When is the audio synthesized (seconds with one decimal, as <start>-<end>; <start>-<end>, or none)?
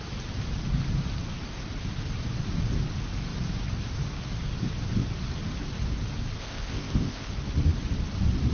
6.4-7.3